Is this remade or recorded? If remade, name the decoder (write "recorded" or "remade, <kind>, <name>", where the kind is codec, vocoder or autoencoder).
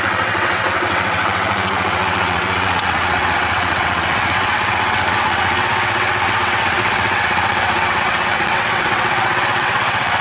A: remade, vocoder, WaveNeXt